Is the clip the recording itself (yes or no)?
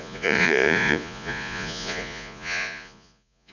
no